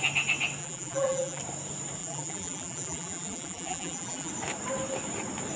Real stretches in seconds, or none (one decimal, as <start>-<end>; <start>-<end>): 0.0-0.6; 1.4-2.0; 4.3-5.6